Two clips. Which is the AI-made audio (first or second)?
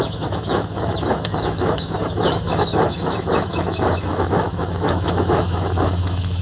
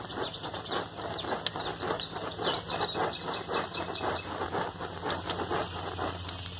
first